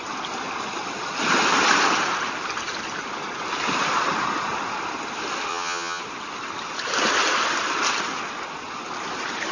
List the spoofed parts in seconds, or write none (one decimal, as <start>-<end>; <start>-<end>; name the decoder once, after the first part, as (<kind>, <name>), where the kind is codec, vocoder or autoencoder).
5.5-6.0 (vocoder, HiFi-GAN)